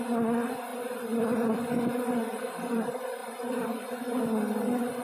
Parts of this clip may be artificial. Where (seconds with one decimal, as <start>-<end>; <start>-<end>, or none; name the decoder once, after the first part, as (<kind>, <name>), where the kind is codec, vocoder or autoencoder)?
none